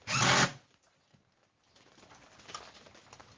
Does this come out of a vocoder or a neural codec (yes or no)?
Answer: no